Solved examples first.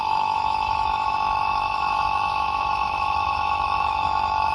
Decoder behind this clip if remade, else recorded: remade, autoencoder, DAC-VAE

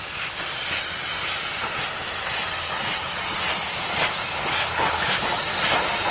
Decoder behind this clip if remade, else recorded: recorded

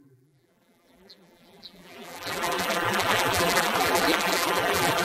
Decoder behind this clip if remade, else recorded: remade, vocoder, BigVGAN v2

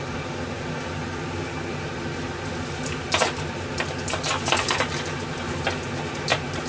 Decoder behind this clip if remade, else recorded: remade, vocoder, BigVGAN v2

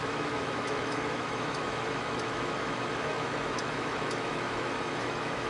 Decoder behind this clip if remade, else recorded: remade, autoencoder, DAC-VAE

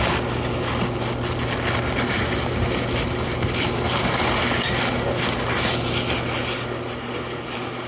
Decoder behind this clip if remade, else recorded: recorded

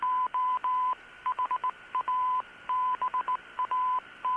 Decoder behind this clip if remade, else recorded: recorded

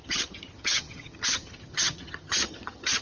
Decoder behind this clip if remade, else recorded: remade, vocoder, HiFi-GAN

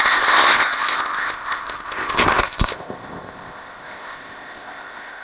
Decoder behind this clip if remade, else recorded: remade, codec, ZipCodec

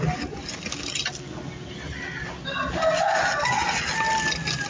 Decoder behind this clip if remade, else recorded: recorded